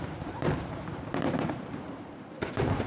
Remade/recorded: remade